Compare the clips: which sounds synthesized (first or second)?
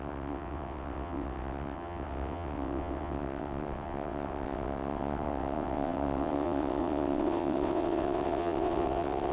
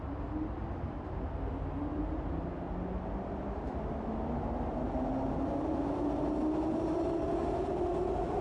first